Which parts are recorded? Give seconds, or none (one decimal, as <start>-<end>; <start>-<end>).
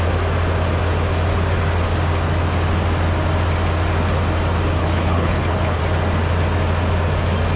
0.0-4.8; 5.8-7.6